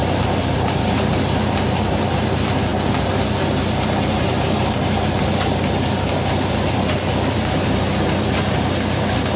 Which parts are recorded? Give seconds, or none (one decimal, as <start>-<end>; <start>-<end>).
0.0-9.4